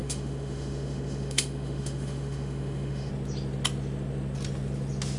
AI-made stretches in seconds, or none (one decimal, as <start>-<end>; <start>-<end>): 0.0-3.1